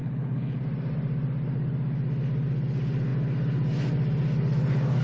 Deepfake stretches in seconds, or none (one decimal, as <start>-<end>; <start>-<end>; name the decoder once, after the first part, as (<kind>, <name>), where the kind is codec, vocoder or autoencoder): 0.0-0.6 (codec, HILCodec)